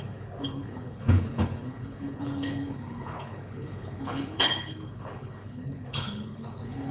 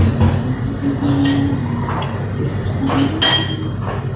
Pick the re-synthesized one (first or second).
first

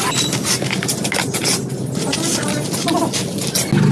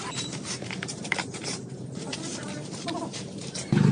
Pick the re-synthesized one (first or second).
second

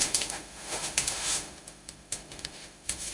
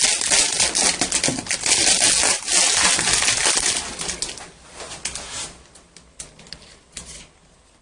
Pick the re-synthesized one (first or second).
first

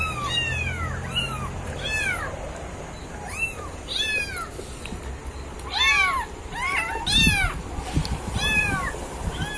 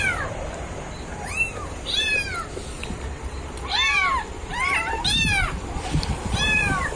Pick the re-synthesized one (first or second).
second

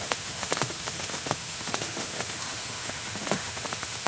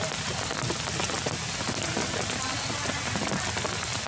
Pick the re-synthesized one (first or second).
first